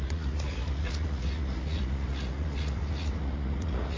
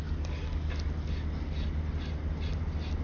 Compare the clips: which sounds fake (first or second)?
first